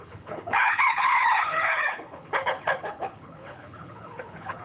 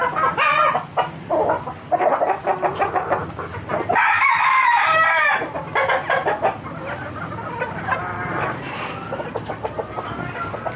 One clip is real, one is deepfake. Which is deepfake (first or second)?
first